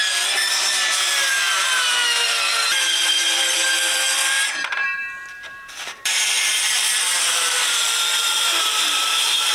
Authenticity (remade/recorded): remade